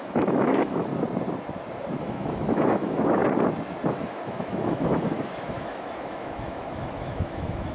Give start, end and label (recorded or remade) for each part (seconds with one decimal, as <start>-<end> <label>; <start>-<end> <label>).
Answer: 0.0-0.9 remade; 0.9-2.0 recorded; 2.0-3.2 remade; 3.2-3.9 recorded; 3.9-7.7 remade